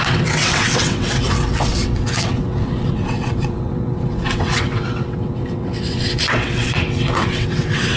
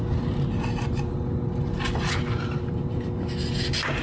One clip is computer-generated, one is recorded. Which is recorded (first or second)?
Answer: second